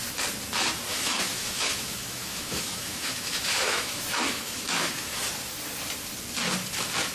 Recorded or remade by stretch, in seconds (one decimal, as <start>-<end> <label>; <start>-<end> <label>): 0.0-0.9 recorded; 0.9-5.2 remade; 5.2-7.1 recorded